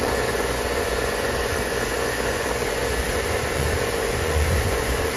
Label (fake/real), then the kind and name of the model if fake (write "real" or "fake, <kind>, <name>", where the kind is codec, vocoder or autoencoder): fake, vocoder, Vocos